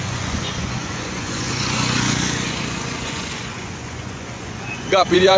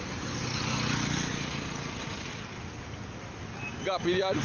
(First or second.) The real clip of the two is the second